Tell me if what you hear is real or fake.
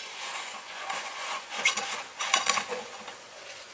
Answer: fake